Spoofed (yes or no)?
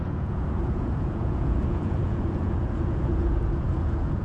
yes